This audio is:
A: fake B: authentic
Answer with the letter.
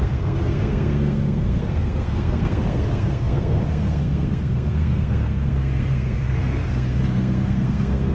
A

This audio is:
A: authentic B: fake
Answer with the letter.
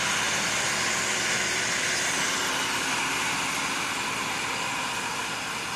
A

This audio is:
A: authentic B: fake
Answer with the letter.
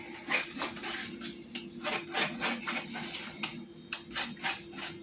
A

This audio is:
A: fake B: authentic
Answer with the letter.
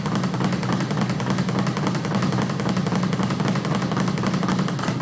B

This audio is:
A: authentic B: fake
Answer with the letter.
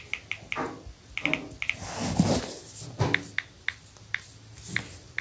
A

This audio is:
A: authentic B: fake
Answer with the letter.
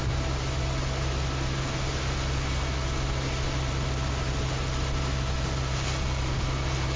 A